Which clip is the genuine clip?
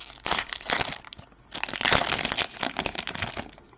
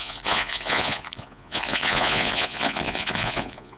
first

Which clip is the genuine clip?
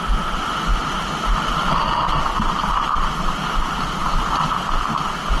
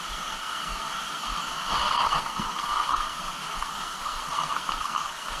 first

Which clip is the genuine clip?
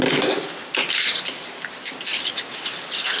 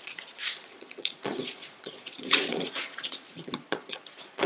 first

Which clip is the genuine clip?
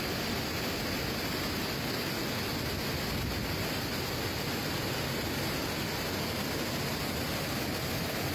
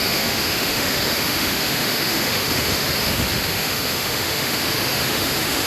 first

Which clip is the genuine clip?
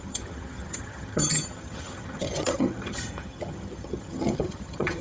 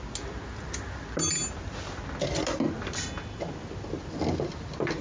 second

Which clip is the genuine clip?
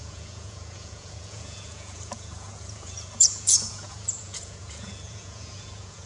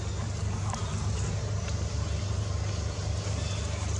second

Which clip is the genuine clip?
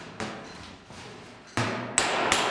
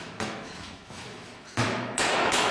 first